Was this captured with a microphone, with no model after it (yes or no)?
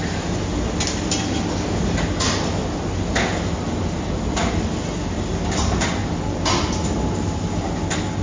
yes